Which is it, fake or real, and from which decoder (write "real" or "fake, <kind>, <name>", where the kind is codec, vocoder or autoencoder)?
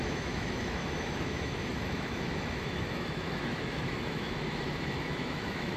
fake, autoencoder, DAC-VAE